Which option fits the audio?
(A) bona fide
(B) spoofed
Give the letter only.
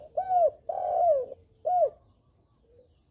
A